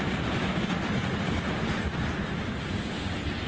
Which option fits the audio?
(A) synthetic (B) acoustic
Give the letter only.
B